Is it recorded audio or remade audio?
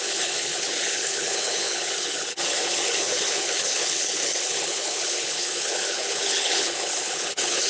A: remade